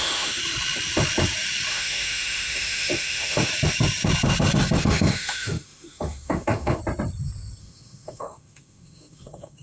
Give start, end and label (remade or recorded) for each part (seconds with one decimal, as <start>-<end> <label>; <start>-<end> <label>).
0.0-0.4 remade; 0.4-1.7 recorded; 1.7-3.5 remade; 3.5-4.8 recorded; 4.8-6.8 remade; 6.8-7.6 recorded; 7.6-9.6 remade